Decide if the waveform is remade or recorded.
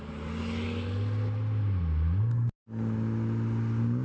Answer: recorded